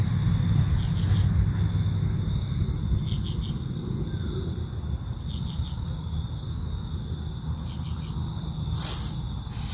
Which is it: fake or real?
real